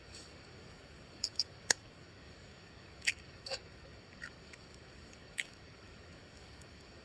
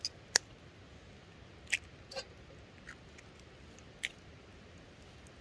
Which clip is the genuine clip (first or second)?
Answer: second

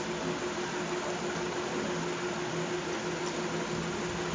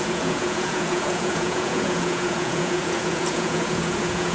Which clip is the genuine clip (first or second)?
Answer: first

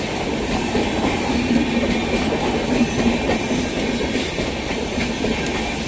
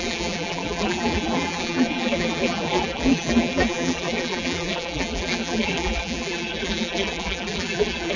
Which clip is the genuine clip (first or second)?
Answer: first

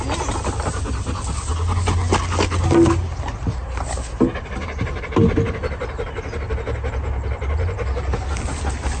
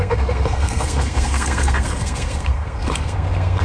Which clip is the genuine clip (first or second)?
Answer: first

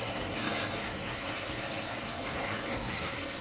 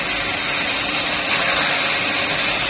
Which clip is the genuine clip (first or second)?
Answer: second